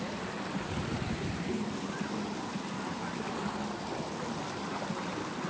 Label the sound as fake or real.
real